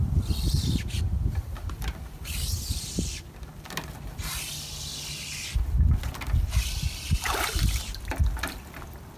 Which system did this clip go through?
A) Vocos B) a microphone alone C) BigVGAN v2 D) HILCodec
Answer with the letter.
B